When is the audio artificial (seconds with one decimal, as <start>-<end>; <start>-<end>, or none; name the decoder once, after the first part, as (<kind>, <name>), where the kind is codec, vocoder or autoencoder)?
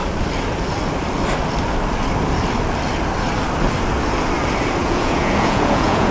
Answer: 4.8-6.1 (vocoder, Vocos)